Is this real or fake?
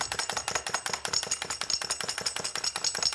real